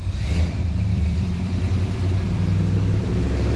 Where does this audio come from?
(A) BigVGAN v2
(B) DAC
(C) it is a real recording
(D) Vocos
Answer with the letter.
A